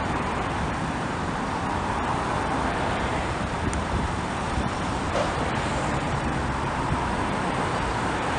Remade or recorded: remade